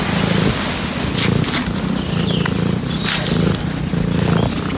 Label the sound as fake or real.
real